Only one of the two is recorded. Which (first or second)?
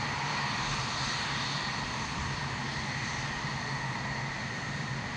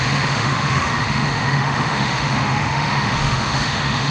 first